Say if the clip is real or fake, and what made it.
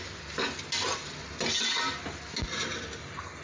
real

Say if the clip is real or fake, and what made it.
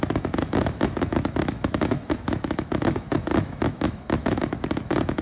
fake, autoencoder, DAC-VAE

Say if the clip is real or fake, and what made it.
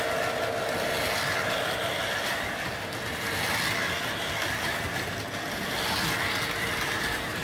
real